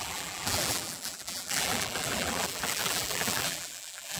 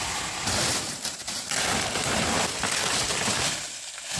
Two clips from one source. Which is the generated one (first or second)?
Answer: first